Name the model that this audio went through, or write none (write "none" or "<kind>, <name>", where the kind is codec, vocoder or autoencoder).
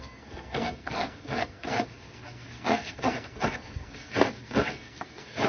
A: codec, SNAC